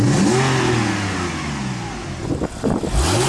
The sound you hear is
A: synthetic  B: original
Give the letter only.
B